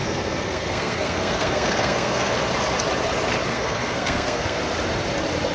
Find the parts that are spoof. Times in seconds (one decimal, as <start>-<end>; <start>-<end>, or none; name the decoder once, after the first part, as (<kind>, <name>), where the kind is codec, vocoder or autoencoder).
0.0-2.4 (codec, SNAC); 3.5-4.6